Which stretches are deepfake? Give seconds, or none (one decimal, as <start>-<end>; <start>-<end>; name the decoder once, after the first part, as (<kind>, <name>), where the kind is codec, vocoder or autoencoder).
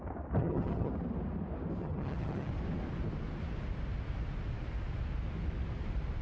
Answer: 0.4-0.9 (vocoder, HiFi-GAN); 1.8-2.5